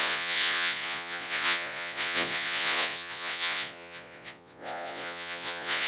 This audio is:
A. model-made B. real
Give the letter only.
A